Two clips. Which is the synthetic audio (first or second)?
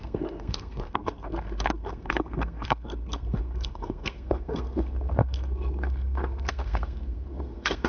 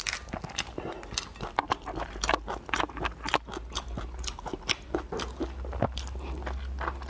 first